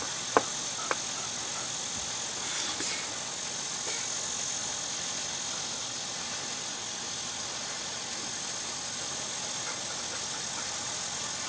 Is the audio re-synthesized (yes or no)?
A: no